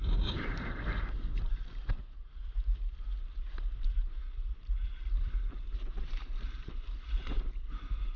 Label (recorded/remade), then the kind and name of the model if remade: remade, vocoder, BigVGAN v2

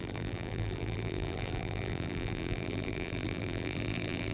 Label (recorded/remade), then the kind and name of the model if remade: remade, vocoder, BigVGAN v2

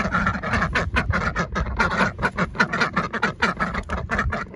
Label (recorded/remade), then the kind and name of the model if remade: recorded